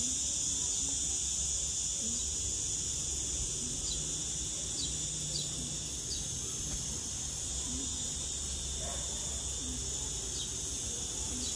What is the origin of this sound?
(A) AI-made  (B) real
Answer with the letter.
B